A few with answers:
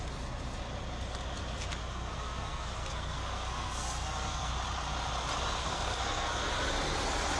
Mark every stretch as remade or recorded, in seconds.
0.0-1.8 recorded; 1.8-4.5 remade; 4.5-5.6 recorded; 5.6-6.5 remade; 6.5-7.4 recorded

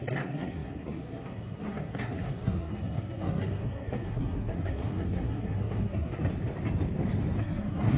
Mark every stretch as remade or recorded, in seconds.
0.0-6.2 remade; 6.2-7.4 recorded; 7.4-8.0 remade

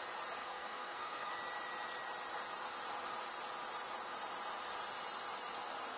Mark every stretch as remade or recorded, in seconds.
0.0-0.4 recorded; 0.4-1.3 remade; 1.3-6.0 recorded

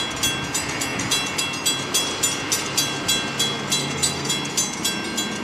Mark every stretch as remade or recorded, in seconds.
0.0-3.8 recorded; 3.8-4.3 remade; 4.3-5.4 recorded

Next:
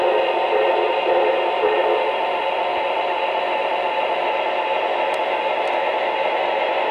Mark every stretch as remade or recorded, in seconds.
0.0-6.9 recorded

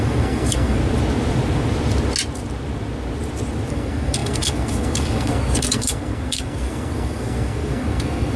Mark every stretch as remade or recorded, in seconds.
0.0-0.8 remade; 0.8-3.7 recorded; 3.7-8.4 remade